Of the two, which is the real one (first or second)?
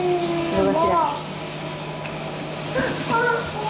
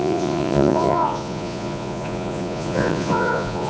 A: first